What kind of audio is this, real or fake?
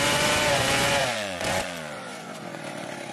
fake